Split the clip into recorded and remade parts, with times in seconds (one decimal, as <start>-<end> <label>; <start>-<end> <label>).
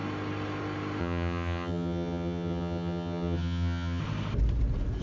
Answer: 0.0-1.0 recorded; 1.0-4.0 remade; 4.0-5.0 recorded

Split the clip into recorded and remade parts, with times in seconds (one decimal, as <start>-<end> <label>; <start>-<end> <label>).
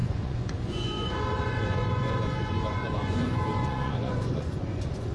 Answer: 0.0-5.1 remade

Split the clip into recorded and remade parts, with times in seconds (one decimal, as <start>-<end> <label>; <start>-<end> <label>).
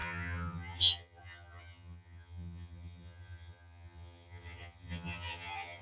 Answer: 0.0-5.8 remade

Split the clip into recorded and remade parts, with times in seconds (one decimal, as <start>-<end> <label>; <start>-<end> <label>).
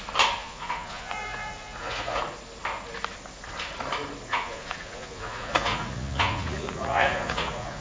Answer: 0.0-0.4 recorded; 0.4-2.2 remade; 2.2-4.3 recorded; 4.3-7.8 remade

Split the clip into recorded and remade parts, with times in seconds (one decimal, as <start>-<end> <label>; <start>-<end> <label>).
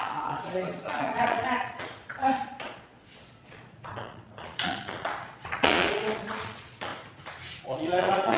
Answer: 0.0-6.9 remade; 6.9-7.6 recorded; 7.6-8.4 remade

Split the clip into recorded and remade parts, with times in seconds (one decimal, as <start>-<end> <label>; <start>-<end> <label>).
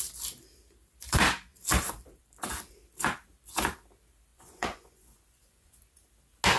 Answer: 0.0-4.3 recorded; 4.3-5.8 remade; 5.8-6.6 recorded